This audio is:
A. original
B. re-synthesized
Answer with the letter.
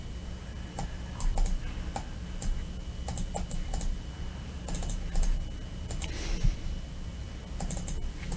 A